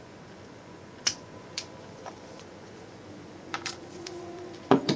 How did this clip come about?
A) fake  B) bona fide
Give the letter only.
A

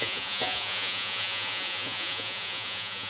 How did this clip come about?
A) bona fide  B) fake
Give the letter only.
B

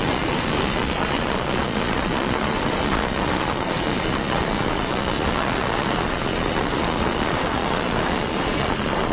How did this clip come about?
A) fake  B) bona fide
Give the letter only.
A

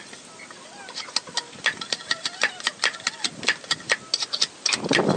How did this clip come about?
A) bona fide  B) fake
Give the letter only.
A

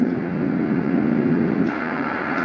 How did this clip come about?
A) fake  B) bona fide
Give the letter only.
A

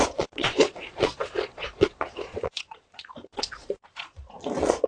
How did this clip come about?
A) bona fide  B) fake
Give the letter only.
B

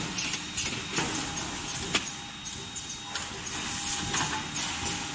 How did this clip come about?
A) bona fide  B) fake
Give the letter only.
A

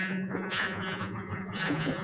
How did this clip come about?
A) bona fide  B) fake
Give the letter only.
B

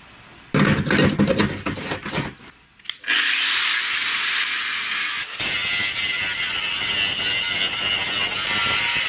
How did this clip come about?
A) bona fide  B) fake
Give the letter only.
A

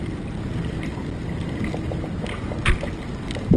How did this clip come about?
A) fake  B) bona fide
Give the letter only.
B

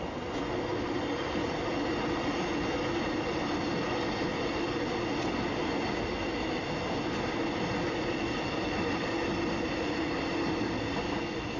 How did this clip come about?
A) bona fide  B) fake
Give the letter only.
A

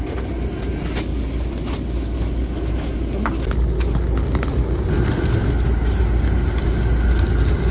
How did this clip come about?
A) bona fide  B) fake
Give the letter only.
A